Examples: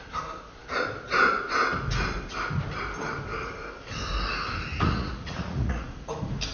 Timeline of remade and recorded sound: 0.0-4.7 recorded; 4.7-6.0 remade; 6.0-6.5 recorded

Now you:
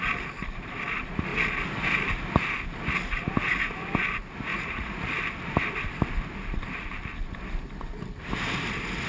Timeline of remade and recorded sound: 0.0-4.5 recorded; 4.5-5.1 remade; 5.1-9.1 recorded

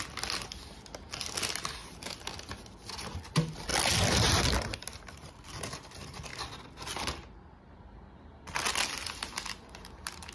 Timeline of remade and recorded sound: 0.0-10.3 recorded

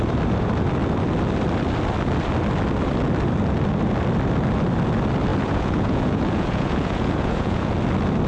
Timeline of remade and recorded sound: 0.0-5.3 recorded; 5.3-7.7 remade; 7.7-8.3 recorded

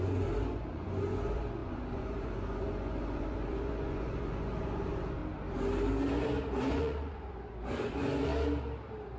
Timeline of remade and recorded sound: 0.0-5.2 remade; 5.2-6.7 recorded; 6.7-8.3 remade; 8.3-9.2 recorded